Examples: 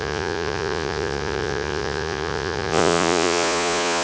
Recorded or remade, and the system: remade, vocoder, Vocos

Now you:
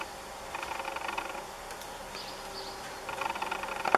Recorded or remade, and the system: recorded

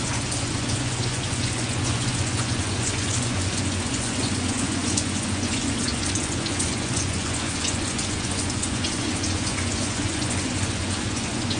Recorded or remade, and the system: remade, vocoder, Vocos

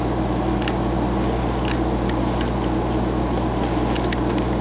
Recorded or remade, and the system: recorded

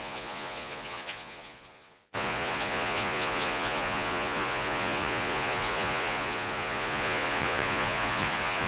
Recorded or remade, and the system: remade, vocoder, Vocos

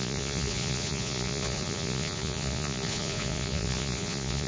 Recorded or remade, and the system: remade, vocoder, Vocos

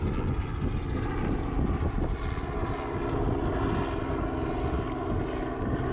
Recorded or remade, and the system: recorded